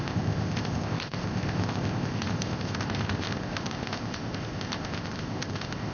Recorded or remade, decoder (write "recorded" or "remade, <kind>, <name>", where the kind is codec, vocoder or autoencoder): remade, codec, ZipCodec